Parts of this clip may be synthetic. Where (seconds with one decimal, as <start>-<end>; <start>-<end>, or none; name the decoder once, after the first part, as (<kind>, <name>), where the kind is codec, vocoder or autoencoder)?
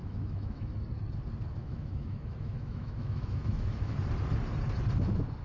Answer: 0.0-0.7 (autoencoder, DAC-VAE); 1.6-4.0